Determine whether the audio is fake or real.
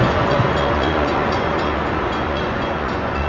fake